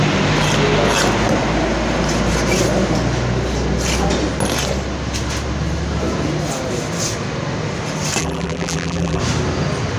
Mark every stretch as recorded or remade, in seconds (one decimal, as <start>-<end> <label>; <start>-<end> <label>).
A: 0.0-8.2 recorded; 8.2-9.2 remade; 9.2-10.0 recorded